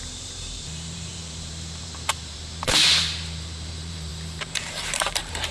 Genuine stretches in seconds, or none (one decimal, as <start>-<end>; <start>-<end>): none